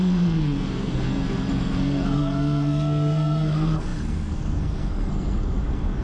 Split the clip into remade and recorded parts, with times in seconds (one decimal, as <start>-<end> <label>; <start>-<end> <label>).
0.0-6.0 remade